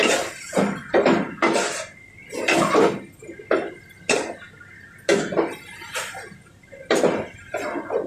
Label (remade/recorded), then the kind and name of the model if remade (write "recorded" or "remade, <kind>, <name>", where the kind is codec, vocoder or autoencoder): recorded